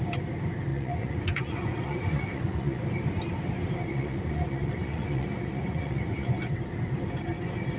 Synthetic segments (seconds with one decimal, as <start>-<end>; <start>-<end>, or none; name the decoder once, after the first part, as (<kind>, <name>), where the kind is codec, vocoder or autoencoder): 0.7-2.8 (vocoder, Vocos); 3.9-6.5